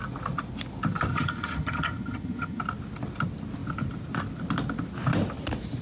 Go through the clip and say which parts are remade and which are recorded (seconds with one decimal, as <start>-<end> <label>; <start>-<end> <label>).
0.0-1.1 recorded; 1.1-2.6 remade; 2.6-5.8 recorded

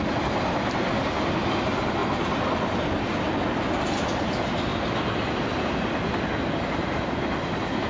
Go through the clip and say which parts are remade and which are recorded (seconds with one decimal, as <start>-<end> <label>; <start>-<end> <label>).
0.0-7.9 recorded

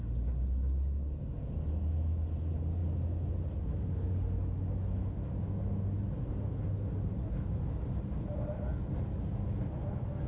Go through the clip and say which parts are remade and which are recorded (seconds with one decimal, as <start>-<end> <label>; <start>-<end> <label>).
0.0-10.3 recorded

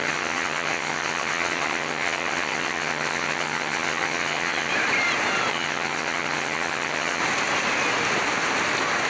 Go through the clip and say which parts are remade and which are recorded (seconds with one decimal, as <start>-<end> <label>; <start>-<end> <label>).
0.0-4.7 remade; 4.7-5.5 recorded; 5.5-7.2 remade; 7.2-9.1 recorded

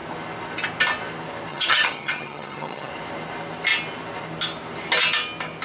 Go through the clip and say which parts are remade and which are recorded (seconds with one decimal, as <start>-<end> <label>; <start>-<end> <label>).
0.0-1.5 recorded; 1.5-2.9 remade; 2.9-5.6 recorded

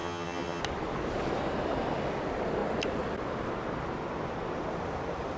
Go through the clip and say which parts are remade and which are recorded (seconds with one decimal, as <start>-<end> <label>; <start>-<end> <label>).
0.0-0.6 remade; 0.6-5.4 recorded

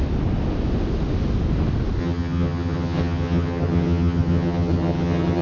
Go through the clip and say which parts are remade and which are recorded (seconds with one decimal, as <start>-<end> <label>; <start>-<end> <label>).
0.0-2.0 recorded; 2.0-5.4 remade